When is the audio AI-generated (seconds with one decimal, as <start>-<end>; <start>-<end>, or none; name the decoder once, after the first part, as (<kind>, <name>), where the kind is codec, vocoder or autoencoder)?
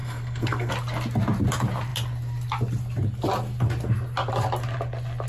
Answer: 0.0-0.7 (codec, SNAC)